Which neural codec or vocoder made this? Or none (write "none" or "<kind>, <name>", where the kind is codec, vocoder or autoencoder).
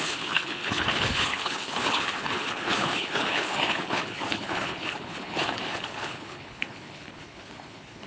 codec, HILCodec